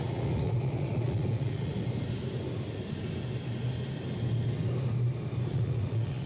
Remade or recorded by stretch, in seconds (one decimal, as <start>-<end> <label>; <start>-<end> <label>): 0.0-1.7 remade; 1.7-5.5 recorded; 5.5-6.3 remade